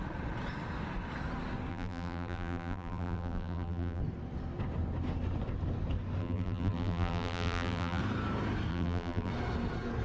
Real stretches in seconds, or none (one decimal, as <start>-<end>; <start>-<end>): 0.0-1.7; 4.0-6.2; 8.0-8.7; 9.3-10.0